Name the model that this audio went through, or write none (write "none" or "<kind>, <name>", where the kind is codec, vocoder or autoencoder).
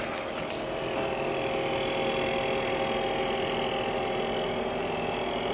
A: none